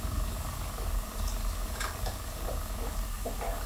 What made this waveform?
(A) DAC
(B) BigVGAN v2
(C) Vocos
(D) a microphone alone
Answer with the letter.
A